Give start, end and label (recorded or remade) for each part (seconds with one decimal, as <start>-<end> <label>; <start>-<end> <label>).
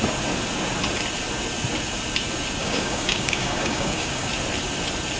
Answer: 0.0-2.6 recorded; 2.6-4.3 remade; 4.3-5.2 recorded